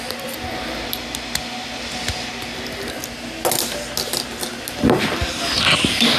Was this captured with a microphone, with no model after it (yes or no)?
yes